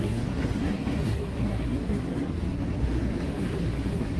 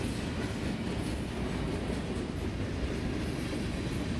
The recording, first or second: second